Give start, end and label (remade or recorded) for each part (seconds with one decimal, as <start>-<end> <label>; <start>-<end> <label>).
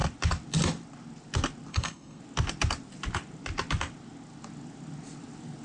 0.0-1.7 recorded; 1.7-2.2 remade; 2.2-5.6 recorded